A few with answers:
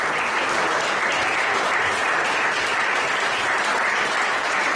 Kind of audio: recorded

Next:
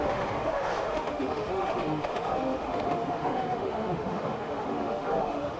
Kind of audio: remade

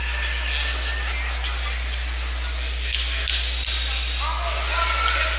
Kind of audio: recorded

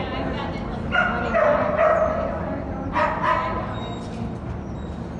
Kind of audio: recorded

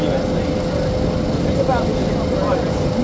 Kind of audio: recorded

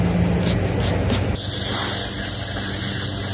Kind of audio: recorded